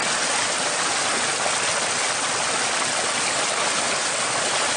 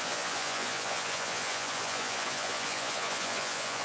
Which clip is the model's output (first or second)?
second